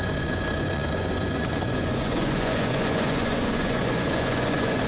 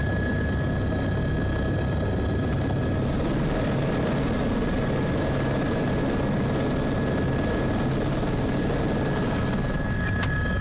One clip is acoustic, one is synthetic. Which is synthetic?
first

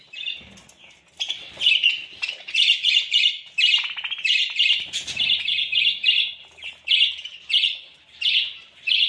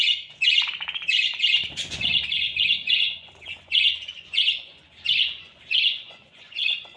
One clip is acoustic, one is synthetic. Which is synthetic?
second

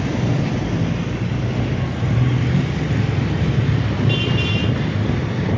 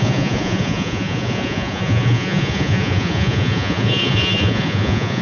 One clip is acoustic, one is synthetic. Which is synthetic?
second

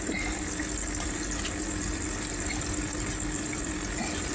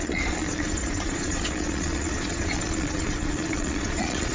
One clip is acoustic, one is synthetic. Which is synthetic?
second